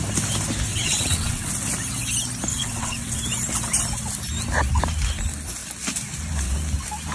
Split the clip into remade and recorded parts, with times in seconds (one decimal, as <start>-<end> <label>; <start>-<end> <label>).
0.0-0.7 recorded; 0.7-1.5 remade; 1.5-2.5 recorded; 2.5-3.2 remade; 3.2-7.1 recorded